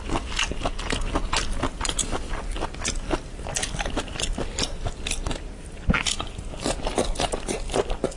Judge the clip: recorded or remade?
recorded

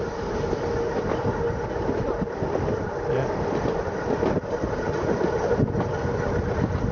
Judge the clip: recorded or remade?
recorded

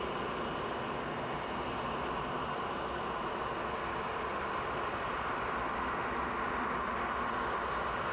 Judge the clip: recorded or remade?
recorded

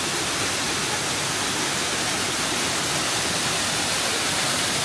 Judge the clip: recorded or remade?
recorded